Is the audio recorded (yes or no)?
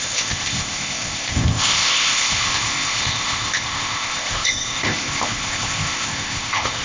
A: no